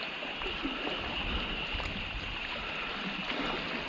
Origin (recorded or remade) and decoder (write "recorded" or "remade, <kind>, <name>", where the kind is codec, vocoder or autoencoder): recorded